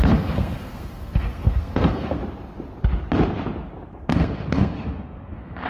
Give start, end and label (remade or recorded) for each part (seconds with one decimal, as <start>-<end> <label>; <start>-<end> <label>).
0.0-2.2 remade; 2.2-4.1 recorded; 4.1-5.7 remade